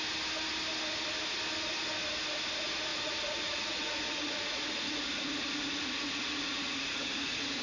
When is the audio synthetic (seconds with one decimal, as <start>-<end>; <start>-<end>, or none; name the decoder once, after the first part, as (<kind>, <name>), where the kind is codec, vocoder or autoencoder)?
2.9-7.6 (vocoder, Vocos)